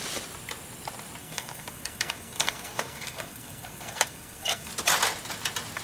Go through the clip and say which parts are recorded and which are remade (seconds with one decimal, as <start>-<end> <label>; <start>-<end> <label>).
0.0-1.2 recorded; 1.2-4.7 remade; 4.7-5.8 recorded